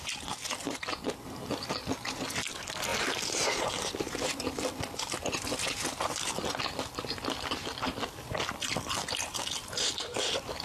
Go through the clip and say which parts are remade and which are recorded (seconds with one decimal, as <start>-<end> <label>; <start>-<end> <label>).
0.0-10.6 recorded